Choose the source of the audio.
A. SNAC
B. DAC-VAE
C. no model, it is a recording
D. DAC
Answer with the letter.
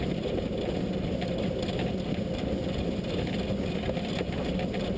C